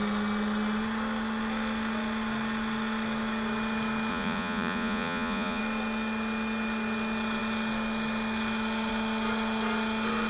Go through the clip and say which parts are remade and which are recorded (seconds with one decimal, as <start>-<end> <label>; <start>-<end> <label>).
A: 0.0-4.1 recorded; 4.1-5.6 remade; 5.6-10.3 recorded